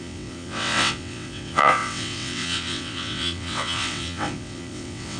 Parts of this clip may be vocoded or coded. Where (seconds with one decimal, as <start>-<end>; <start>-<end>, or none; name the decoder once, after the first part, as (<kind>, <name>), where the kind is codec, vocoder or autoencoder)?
0.0-5.2 (vocoder, WaveNeXt)